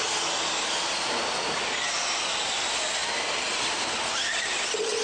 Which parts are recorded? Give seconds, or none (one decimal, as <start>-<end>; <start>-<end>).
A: 0.0-5.0